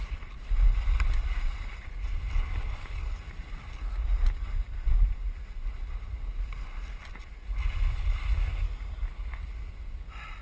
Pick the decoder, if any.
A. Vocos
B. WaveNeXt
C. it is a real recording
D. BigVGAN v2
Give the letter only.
C